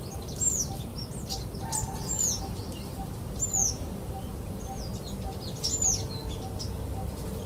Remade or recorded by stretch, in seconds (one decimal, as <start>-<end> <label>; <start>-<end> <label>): 0.0-7.5 recorded